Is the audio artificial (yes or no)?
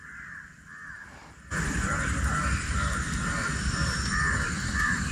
no